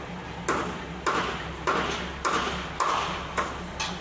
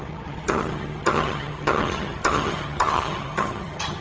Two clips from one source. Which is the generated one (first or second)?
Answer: second